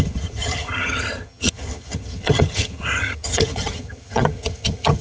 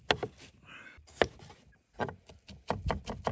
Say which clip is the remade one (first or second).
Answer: first